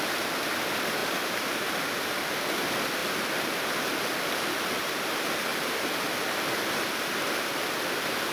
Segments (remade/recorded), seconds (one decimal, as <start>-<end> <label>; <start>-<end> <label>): 0.0-1.0 recorded; 1.0-1.7 remade; 1.7-8.3 recorded